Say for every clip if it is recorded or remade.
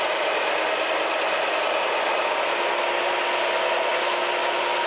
recorded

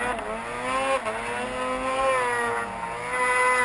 recorded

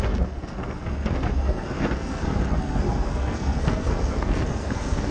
remade